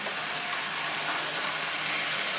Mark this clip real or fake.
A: real